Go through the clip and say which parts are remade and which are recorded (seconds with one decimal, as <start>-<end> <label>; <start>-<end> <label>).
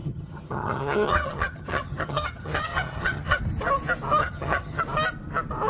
0.0-3.4 remade; 3.4-4.2 recorded; 4.2-4.8 remade; 4.8-5.7 recorded